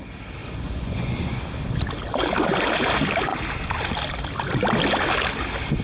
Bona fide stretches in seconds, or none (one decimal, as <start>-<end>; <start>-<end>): 0.0-0.4; 1.4-5.8